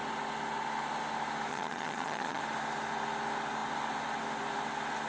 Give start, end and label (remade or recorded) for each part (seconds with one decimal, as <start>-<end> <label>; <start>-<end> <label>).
0.0-1.5 recorded; 1.5-2.4 remade; 2.4-5.1 recorded